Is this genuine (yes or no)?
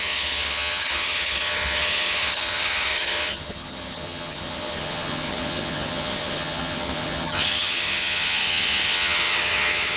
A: no